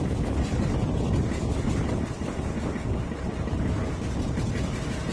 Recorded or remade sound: recorded